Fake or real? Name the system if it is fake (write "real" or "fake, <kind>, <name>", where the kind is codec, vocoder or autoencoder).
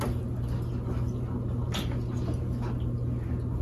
real